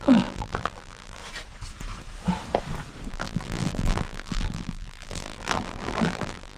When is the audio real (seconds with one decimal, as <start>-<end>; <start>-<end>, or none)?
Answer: 1.2-3.1